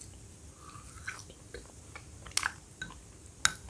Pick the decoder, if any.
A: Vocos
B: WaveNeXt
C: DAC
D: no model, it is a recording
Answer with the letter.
D